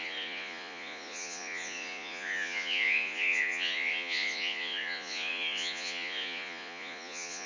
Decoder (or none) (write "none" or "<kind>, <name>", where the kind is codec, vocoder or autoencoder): vocoder, Vocos